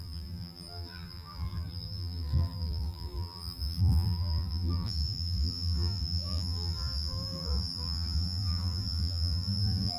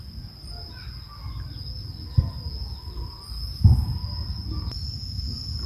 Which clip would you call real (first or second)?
second